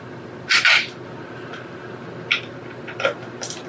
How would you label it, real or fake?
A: real